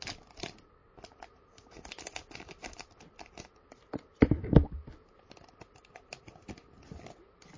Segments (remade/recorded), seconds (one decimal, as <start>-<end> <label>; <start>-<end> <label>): 0.0-7.6 recorded